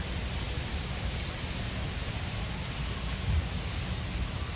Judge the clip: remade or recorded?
recorded